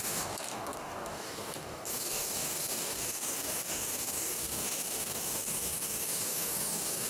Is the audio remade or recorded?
remade